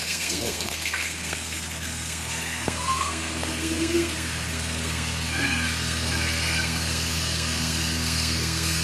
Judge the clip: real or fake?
fake